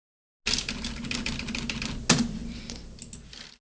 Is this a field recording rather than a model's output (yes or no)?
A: yes